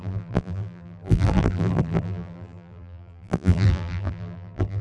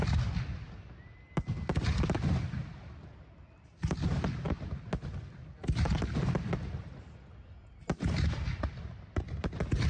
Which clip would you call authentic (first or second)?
second